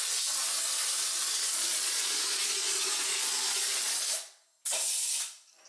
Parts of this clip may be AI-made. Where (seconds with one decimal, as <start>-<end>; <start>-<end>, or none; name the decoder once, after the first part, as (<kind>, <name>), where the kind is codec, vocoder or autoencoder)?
1.5-3.9 (vocoder, Vocos)